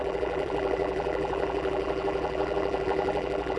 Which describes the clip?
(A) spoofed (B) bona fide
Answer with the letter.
A